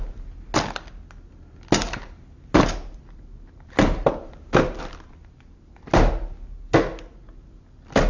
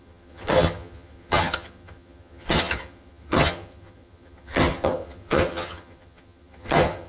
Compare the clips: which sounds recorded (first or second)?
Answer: first